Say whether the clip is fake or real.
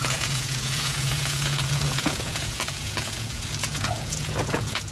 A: fake